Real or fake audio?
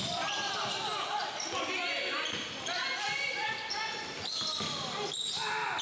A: real